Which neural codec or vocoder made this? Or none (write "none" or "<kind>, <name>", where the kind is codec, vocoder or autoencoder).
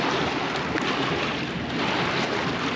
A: none